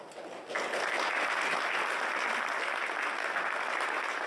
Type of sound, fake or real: real